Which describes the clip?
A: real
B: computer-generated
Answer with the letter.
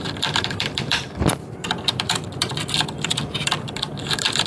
B